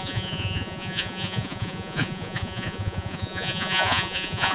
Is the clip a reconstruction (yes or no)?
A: yes